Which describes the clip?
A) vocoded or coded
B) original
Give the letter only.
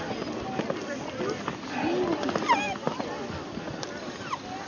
B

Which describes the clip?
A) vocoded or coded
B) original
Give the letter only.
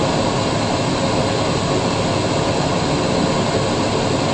B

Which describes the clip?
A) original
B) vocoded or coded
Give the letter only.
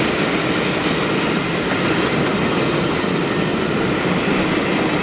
A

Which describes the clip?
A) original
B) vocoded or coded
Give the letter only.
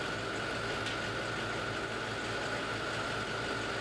A